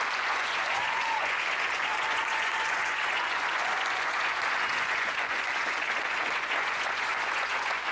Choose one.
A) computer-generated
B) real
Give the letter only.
A